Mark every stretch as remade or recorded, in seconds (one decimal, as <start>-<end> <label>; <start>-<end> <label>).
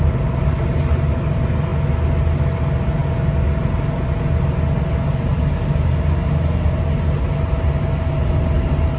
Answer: 0.0-9.0 recorded